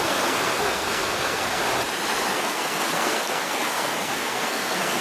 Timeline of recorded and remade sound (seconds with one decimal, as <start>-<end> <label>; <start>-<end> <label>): 0.0-1.6 remade; 1.6-2.3 recorded; 2.3-5.0 remade